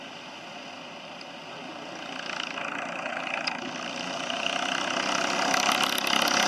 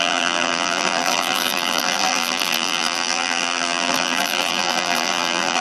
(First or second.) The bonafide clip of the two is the first